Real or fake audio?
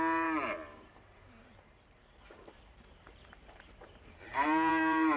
fake